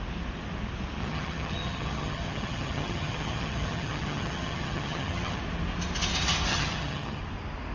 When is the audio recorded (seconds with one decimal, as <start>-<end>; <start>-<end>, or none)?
0.0-1.0; 5.4-6.5; 7.2-7.7